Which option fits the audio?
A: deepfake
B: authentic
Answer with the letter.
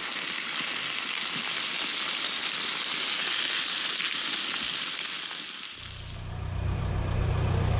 B